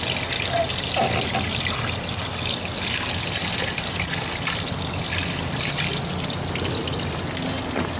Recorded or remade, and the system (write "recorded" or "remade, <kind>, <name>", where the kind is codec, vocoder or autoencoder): recorded